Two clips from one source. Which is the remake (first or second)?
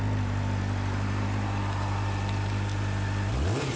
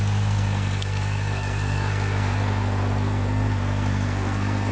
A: second